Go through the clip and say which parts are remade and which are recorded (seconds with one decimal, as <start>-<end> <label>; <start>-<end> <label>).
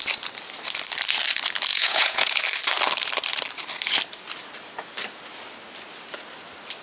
0.0-1.7 recorded; 1.7-2.4 remade; 2.4-6.8 recorded